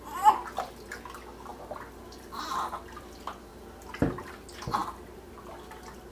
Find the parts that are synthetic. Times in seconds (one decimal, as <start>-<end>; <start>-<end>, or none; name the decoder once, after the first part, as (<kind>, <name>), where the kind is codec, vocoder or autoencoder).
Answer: 1.5-2.4 (vocoder, BigVGAN v2); 3.5-4.3; 4.8-6.1